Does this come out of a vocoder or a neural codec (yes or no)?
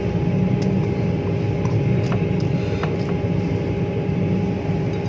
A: no